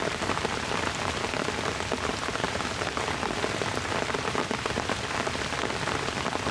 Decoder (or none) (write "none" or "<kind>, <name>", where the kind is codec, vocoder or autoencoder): none